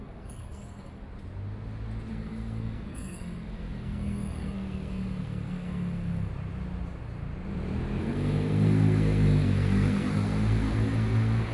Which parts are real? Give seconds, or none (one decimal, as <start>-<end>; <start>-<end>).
1.0-2.1; 6.3-8.0